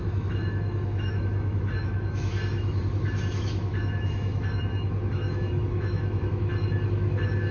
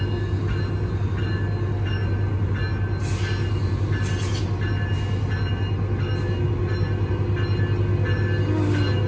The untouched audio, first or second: second